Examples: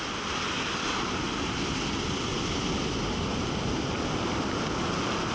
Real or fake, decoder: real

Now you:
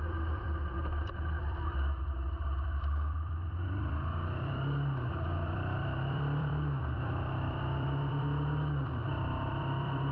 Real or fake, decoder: fake, vocoder, BigVGAN v2